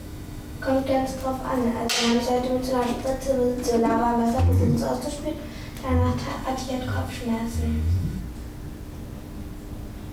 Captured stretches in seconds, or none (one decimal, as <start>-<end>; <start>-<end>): 0.8-6.3; 8.2-10.1